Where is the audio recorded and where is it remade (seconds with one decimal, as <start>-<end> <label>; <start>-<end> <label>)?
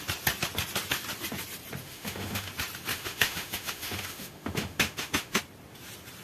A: 0.0-1.8 recorded; 1.8-2.5 remade; 2.5-2.9 recorded; 2.9-5.4 remade; 5.4-6.2 recorded